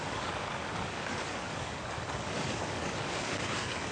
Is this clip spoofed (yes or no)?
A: yes